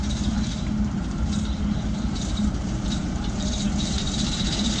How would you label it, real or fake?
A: fake